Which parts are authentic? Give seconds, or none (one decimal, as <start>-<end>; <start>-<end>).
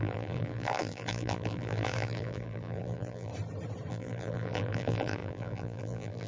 3.3-3.9